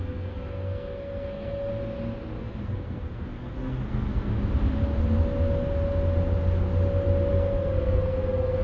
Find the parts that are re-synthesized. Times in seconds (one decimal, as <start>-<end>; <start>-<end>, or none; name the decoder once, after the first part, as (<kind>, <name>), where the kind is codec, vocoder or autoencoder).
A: 0.0-1.7 (codec, SNAC); 2.6-4.3; 7.3-8.6

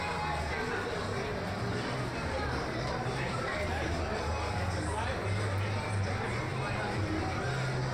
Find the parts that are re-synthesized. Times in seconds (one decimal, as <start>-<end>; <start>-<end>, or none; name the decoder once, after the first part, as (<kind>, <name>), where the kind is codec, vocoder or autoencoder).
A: 2.2-4.0 (vocoder, BigVGAN v2)

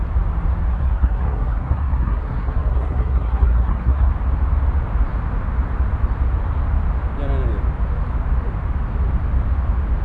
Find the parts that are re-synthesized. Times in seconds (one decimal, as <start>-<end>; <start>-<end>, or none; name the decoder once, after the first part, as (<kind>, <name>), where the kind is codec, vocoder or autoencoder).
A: 0.7-4.1 (codec, SNAC)

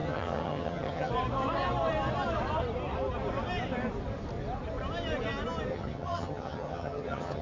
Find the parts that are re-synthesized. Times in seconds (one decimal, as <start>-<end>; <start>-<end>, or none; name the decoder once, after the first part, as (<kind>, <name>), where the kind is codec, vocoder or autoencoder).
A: 0.0-1.1 (vocoder, HiFi-GAN); 5.7-7.4

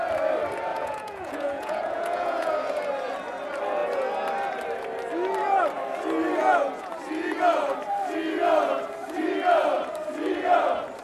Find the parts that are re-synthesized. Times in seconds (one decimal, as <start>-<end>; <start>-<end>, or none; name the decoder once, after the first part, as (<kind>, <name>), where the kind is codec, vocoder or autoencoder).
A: 0.7-2.5 (vocoder, Vocos); 6.4-6.9

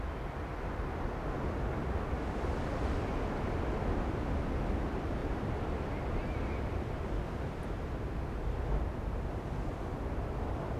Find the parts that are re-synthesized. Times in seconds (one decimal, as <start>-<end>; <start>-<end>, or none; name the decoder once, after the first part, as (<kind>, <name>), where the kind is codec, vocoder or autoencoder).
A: 5.2-6.9 (vocoder, BigVGAN v2)

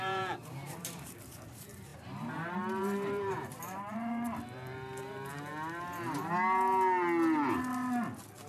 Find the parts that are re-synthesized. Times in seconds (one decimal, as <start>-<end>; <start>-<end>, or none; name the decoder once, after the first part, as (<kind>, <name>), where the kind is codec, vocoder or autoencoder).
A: 0.0-5.5 (vocoder, BigVGAN v2)